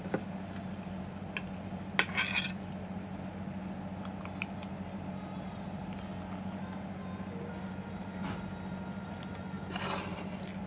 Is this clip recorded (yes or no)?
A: yes